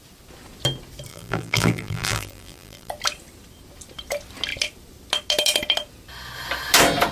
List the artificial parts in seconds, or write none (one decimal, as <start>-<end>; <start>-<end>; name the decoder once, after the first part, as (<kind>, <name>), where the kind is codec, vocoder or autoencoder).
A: 1.1-2.9 (vocoder, BigVGAN v2)